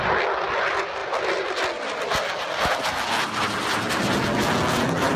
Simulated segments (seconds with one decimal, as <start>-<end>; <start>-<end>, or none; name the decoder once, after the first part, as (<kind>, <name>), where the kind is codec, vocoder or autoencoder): none